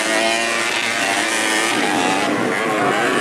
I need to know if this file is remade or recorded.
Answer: recorded